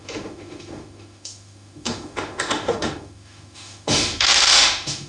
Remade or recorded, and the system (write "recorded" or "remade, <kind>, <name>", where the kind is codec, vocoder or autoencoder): remade, autoencoder, DAC-VAE